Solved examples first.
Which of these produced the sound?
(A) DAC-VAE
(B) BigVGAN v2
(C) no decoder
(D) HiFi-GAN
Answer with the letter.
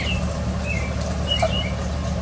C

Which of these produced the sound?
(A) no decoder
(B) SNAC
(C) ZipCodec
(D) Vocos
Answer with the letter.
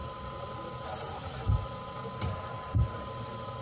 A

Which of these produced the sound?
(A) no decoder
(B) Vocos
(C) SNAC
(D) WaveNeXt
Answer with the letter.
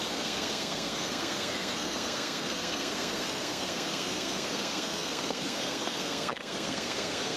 C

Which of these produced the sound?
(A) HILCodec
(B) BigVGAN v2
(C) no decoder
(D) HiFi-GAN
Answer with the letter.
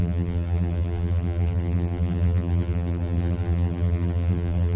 B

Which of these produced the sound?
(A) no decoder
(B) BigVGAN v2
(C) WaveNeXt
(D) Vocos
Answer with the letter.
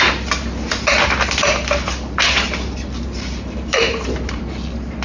A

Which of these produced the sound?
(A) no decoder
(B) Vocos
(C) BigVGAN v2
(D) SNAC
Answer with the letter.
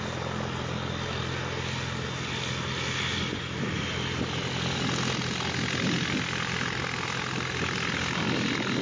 A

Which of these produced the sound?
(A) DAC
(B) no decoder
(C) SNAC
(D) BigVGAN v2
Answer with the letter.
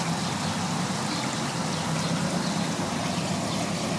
B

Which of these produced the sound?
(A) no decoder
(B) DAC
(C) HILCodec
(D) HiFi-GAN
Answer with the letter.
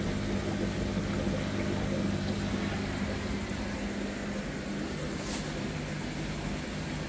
A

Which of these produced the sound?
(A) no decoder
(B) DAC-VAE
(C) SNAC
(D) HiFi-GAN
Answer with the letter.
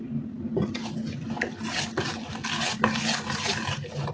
A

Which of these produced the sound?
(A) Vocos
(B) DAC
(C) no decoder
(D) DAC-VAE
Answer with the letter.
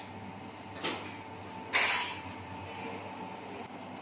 C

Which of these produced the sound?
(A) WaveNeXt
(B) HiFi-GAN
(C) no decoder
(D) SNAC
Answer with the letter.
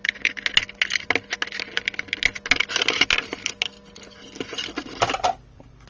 C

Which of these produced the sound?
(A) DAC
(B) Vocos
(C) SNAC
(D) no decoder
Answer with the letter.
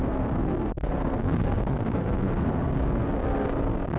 C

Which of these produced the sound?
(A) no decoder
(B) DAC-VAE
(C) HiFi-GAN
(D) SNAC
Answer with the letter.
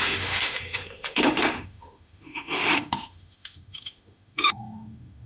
B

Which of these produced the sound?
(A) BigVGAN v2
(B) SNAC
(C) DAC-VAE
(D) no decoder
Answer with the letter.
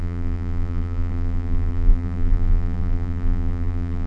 A